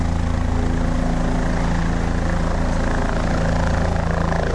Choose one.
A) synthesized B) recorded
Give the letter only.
B